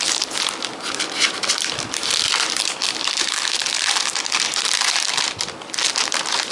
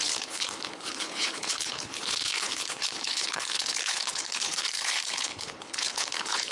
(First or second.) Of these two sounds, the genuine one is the first